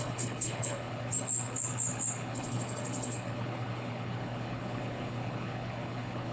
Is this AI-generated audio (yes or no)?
yes